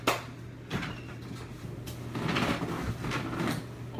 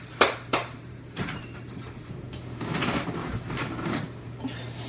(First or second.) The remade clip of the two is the second